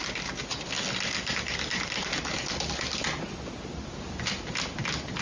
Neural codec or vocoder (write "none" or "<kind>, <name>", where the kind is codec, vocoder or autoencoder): none